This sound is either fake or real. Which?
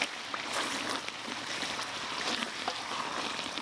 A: real